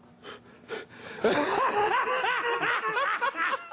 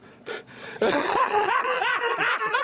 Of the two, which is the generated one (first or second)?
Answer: second